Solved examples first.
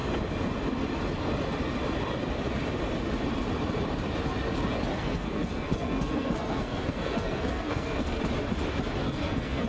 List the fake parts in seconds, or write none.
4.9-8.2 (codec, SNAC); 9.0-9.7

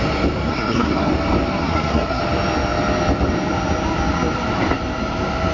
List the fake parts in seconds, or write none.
0.5-1.1 (codec, SNAC); 1.6-2.2